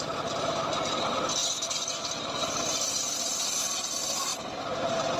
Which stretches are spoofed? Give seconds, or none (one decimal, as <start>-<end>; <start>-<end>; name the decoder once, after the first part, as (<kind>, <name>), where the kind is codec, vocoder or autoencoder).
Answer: none

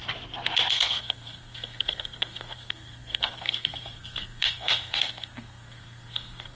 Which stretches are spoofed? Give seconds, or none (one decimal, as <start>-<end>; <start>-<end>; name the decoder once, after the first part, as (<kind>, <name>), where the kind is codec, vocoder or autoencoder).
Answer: 0.7-6.6 (codec, SNAC)

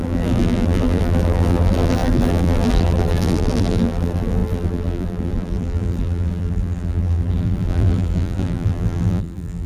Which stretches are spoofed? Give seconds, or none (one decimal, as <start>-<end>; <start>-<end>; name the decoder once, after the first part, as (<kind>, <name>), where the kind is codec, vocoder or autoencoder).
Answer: 0.0-9.7 (vocoder, BigVGAN v2)

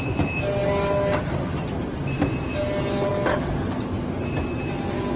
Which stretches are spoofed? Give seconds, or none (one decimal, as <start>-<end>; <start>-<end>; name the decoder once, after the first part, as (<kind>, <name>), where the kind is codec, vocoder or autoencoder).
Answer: none

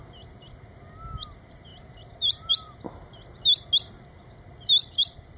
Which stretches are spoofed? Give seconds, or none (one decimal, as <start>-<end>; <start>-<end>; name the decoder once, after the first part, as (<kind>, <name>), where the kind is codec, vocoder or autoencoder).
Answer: 1.7-2.7 (vocoder, BigVGAN v2); 4.8-5.4

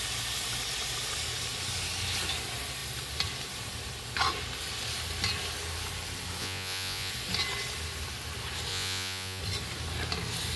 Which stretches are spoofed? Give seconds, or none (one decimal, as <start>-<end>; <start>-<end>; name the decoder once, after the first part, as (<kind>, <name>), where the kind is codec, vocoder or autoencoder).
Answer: 6.4-7.1 (vocoder, Vocos); 8.7-9.4

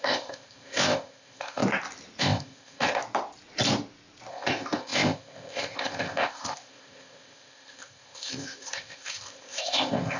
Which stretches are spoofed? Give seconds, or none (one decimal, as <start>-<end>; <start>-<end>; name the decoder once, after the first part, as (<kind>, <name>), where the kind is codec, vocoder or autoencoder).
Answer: 0.0-1.6 (codec, ZipCodec); 2.2-3.0; 4.3-10.2

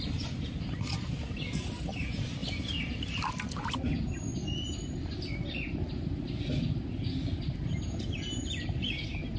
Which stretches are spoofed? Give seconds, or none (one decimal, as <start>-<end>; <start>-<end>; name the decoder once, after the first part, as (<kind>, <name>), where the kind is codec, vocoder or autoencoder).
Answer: none